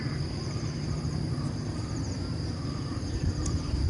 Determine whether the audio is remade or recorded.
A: remade